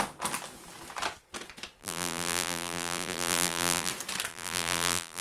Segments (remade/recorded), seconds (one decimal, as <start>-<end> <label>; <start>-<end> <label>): 0.0-1.8 recorded; 1.8-3.9 remade; 3.9-4.3 recorded; 4.3-5.2 remade